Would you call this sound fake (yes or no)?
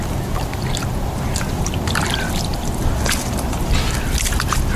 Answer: no